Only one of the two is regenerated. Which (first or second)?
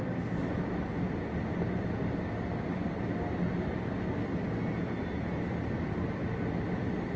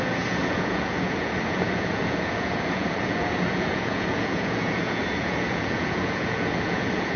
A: second